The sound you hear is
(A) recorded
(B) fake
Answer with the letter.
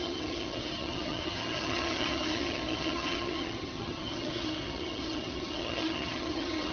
B